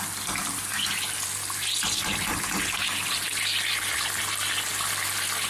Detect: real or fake real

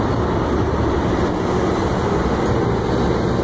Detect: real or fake real